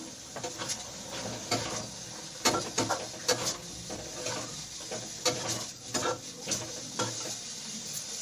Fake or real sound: real